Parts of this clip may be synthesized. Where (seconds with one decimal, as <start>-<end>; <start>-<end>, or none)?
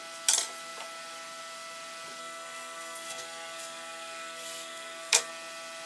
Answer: 2.2-5.3